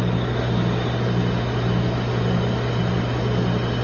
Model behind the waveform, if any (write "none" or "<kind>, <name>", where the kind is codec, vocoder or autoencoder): none